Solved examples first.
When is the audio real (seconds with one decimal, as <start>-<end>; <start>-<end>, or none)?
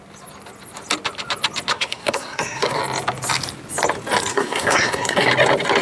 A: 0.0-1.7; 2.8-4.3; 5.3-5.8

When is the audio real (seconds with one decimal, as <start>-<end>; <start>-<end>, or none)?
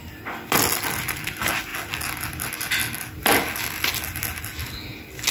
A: 0.0-5.3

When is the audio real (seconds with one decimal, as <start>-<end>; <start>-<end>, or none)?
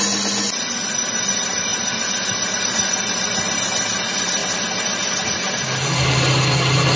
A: 0.0-7.0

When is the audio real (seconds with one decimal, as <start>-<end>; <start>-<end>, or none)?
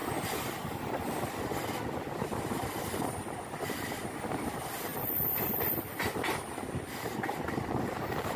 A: 0.0-8.4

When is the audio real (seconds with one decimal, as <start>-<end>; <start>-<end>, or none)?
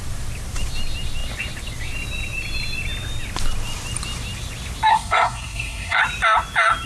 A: 0.0-4.9; 6.0-6.9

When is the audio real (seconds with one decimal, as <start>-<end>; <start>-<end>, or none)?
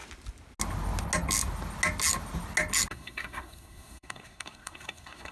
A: 0.0-2.9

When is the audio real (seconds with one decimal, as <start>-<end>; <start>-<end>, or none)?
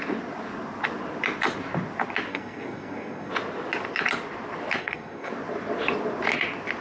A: 0.0-2.3; 3.3-4.8; 5.3-6.8